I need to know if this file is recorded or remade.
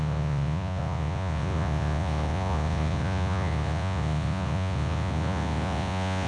remade